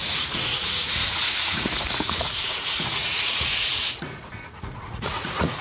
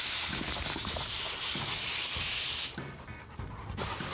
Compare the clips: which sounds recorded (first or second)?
second